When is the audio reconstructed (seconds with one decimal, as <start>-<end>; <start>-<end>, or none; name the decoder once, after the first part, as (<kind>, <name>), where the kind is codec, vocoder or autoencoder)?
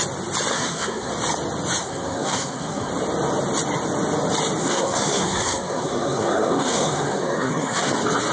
0.5-1.1 (codec, SNAC); 1.8-2.9; 4.6-7.9